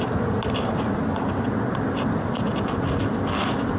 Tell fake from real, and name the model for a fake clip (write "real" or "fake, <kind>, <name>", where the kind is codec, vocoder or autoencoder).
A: real